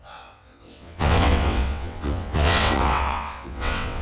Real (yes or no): no